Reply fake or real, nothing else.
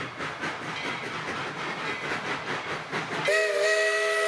real